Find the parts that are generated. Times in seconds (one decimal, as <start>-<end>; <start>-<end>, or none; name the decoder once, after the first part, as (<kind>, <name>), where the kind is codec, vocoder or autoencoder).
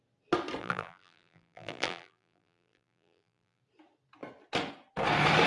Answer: 0.6-3.6 (vocoder, BigVGAN v2)